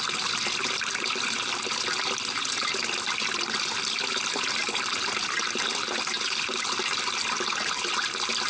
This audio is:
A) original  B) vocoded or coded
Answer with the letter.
A